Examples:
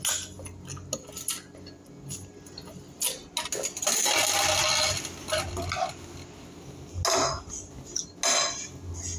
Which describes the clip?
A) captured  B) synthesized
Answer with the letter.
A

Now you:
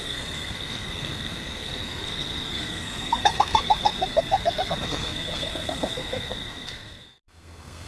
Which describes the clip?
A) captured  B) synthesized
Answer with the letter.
B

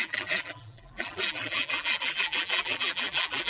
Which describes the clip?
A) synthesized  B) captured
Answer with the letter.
A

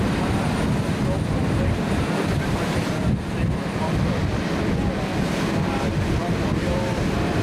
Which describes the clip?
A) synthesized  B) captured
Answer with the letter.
B